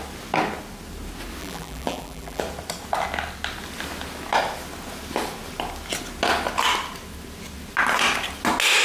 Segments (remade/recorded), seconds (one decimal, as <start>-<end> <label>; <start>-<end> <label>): 0.0-1.4 recorded; 1.4-2.4 remade; 2.4-8.8 recorded